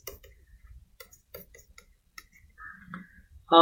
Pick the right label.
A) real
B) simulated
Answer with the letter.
B